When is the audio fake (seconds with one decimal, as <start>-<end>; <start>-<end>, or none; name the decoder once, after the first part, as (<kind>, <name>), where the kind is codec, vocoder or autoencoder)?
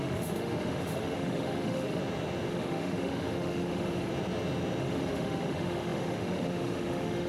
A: 0.0-2.0 (autoencoder, DAC-VAE); 2.5-4.1; 4.8-7.3